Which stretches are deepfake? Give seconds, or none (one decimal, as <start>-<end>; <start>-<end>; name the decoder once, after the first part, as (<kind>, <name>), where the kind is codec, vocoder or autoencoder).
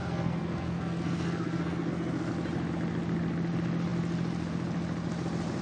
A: 0.0-2.3 (codec, SNAC)